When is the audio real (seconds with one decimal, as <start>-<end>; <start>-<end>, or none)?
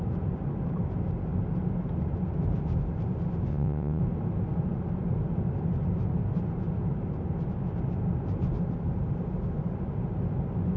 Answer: 0.0-3.5; 4.0-10.8